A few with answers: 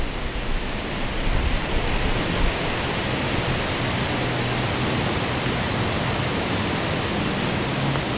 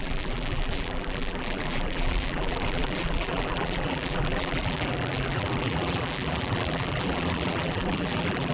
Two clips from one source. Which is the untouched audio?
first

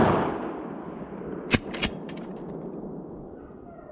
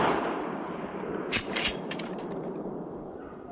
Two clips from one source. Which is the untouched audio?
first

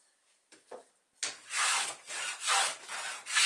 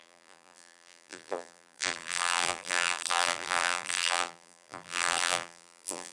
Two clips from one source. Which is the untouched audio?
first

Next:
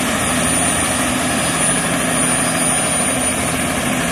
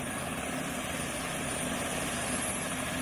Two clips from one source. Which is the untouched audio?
first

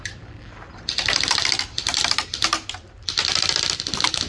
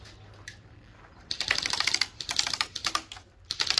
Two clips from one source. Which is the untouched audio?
second